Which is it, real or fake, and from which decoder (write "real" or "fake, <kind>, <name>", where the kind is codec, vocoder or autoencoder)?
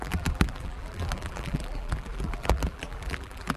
fake, vocoder, BigVGAN v2